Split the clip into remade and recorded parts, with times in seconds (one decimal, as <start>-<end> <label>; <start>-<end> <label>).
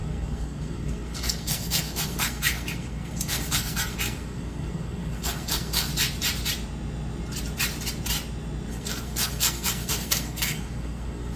0.0-5.9 remade; 5.9-8.7 recorded; 8.7-11.4 remade